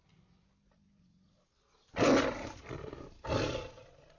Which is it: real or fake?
real